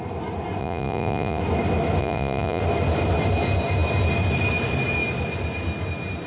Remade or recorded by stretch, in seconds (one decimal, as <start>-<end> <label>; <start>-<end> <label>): 0.0-0.6 recorded; 0.6-1.4 remade; 1.4-2.0 recorded; 2.0-2.6 remade; 2.6-6.3 recorded